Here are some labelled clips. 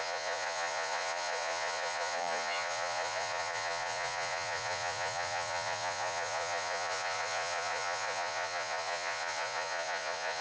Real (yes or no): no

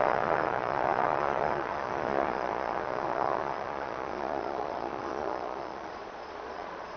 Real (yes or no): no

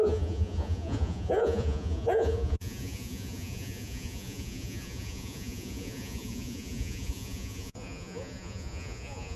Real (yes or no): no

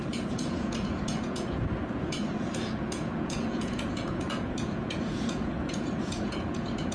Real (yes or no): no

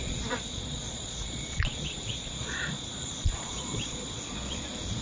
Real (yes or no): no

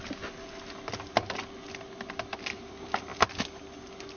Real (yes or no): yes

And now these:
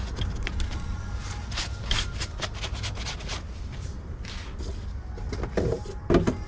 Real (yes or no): yes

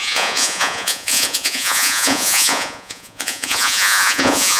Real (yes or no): no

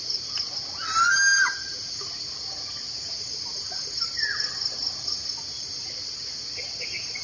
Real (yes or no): yes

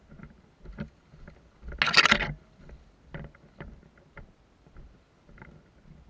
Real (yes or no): yes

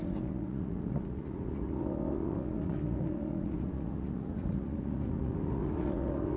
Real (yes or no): no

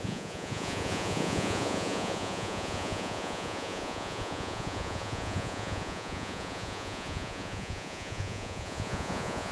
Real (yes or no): no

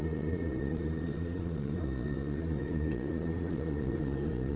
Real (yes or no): no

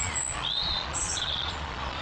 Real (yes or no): no